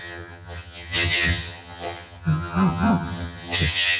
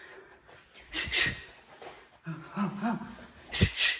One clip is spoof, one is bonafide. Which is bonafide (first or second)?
second